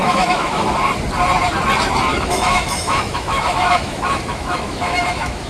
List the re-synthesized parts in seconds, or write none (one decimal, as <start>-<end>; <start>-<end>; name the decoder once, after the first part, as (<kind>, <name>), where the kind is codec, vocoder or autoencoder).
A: 0.0-0.7 (autoencoder, DAC-VAE); 2.1-5.5